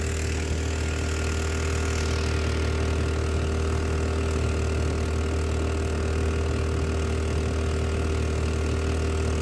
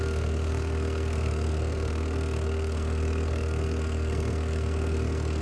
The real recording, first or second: first